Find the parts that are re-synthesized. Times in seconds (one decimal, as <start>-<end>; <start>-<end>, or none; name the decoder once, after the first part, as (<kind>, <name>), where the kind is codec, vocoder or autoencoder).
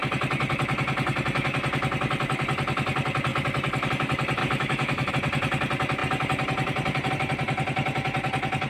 4.4-5.1 (autoencoder, DAC-VAE)